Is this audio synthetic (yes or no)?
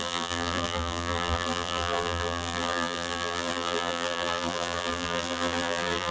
yes